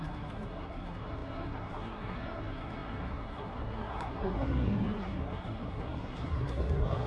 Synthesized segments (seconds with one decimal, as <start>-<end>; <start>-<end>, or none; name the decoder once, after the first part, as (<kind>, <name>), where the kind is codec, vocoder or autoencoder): 0.0-7.1 (codec, SNAC)